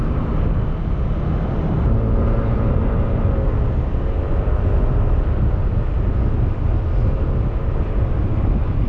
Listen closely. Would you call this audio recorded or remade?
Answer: recorded